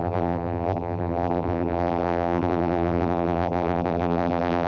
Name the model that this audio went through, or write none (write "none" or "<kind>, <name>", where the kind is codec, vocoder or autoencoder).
vocoder, BigVGAN v2